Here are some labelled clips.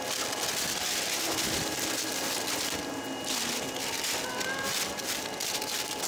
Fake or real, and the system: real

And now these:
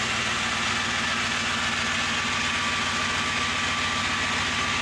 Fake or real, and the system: real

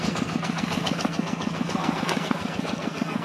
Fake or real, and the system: fake, codec, SNAC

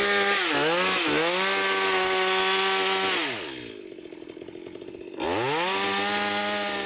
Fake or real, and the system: real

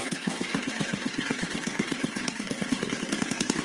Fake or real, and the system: fake, codec, SNAC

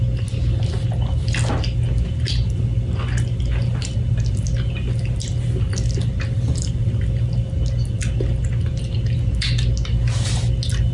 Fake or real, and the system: real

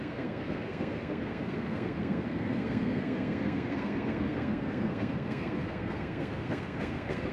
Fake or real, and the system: fake, codec, SNAC